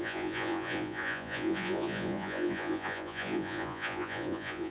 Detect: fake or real fake